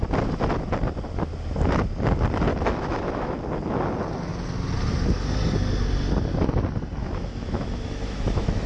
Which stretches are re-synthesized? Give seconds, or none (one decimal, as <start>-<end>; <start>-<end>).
2.5-3.4; 7.0-8.7